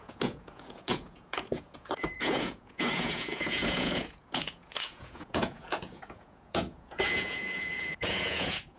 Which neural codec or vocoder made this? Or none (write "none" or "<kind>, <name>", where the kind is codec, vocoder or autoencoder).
vocoder, Vocos